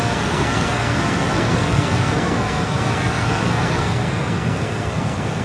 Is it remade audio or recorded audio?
remade